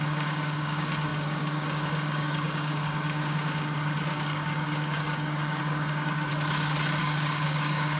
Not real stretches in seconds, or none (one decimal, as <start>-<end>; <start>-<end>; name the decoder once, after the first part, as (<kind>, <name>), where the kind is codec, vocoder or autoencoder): 0.0-6.3 (codec, DAC); 7.0-8.0